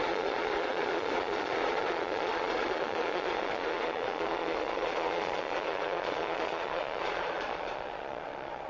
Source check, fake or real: fake